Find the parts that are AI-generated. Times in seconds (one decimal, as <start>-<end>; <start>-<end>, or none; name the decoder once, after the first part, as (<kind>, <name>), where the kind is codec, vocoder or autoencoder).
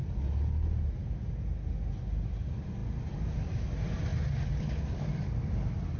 none